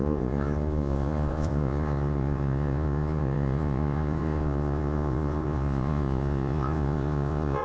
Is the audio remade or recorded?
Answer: remade